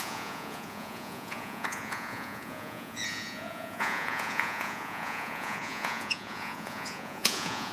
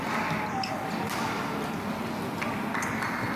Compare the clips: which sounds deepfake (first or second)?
first